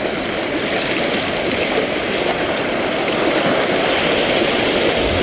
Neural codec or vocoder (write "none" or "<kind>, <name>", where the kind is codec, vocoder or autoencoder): none